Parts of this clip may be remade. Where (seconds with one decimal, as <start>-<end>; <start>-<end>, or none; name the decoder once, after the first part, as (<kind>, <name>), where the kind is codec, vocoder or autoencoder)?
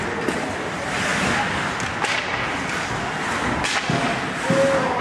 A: none